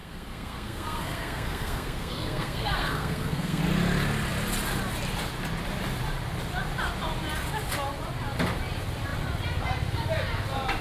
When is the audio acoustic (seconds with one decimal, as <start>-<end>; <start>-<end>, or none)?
3.6-10.8